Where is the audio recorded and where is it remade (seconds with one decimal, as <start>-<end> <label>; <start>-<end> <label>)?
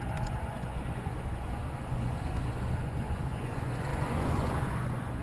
0.0-5.2 remade